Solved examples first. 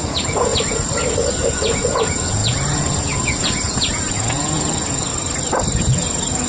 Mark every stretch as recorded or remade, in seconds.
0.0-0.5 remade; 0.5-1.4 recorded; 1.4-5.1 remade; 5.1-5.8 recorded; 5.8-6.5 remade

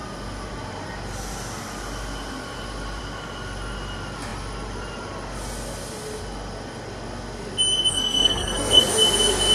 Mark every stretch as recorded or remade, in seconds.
0.0-7.9 recorded; 7.9-8.8 remade; 8.8-9.5 recorded

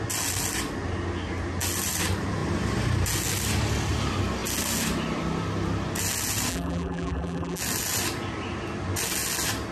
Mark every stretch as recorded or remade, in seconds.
0.0-6.5 recorded; 6.5-7.6 remade; 7.6-9.7 recorded

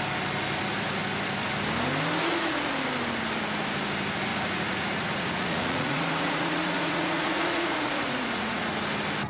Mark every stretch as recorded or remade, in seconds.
0.0-2.2 recorded; 2.2-2.7 remade; 2.7-4.3 recorded; 4.3-8.7 remade; 8.7-9.3 recorded

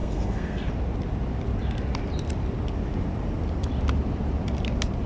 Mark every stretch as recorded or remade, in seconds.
0.0-0.7 remade; 0.7-5.1 recorded